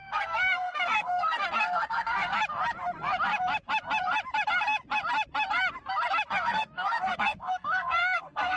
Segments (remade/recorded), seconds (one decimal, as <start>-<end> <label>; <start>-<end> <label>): 0.0-2.3 remade; 2.3-6.3 recorded; 6.3-8.6 remade